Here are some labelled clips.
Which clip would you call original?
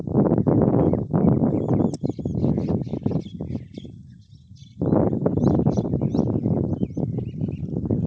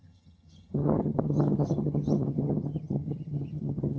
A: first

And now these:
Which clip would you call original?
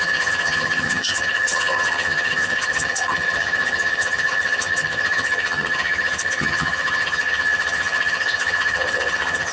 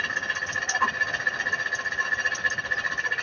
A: second